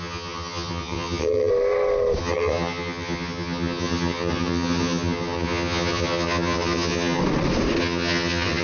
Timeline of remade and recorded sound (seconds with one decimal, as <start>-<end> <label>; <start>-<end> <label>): 0.0-1.5 remade; 1.5-2.2 recorded; 2.2-7.2 remade; 7.2-7.8 recorded; 7.8-8.6 remade